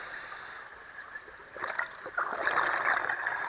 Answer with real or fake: real